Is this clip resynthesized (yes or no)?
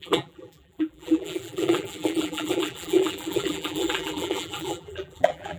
yes